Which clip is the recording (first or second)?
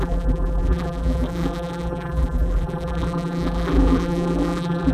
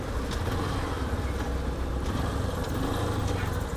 second